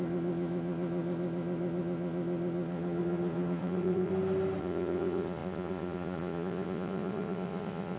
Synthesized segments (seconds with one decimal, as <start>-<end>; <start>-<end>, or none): 0.0-4.1; 4.6-8.0

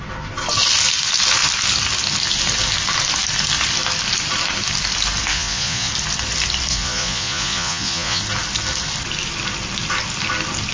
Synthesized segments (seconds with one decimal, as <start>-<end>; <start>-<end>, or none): 5.3-5.9; 6.7-8.2

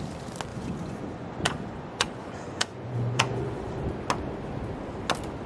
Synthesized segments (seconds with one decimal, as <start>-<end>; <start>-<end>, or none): 0.5-3.8

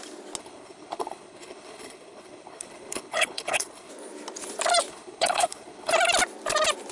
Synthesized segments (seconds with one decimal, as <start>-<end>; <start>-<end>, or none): 0.4-3.9; 4.9-5.9

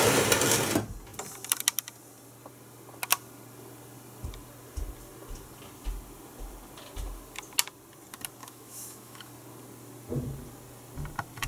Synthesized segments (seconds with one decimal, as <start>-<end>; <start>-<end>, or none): 8.4-9.3

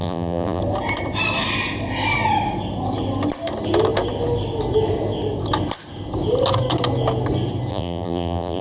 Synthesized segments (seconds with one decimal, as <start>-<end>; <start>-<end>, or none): 0.0-0.6; 7.7-8.6